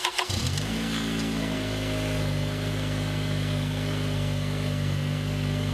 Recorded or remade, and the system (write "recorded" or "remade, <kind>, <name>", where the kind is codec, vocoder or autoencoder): remade, codec, SNAC